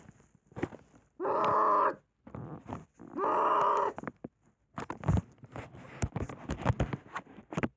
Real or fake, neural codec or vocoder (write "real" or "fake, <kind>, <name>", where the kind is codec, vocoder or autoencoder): real